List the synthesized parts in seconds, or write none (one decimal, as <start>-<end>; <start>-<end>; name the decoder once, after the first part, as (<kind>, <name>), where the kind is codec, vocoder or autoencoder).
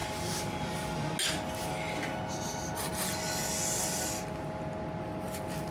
none